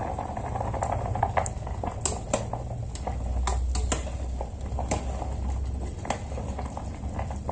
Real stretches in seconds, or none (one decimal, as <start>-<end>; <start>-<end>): 0.0-7.5